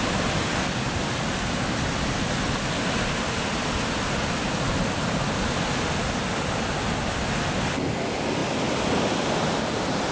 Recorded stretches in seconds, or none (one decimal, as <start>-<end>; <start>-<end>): 0.0-10.1